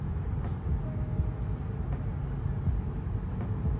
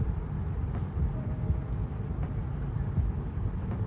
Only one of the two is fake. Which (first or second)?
second